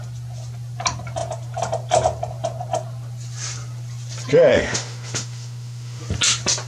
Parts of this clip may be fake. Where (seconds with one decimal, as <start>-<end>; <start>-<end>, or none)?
4.5-6.0